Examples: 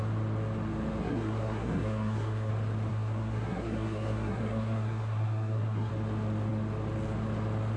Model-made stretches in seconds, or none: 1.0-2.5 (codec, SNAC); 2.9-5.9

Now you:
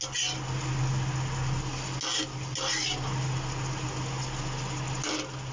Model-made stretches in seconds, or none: none

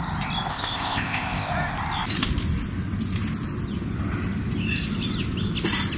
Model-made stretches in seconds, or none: 0.5-1.5 (codec, ZipCodec)

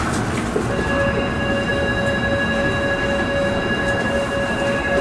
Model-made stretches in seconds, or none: none

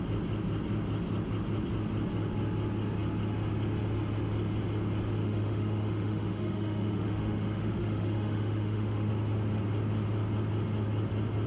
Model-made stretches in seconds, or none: 5.2-9.1 (autoencoder, DAC-VAE)